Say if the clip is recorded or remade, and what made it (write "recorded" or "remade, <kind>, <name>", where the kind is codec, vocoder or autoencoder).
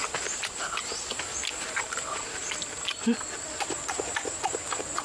recorded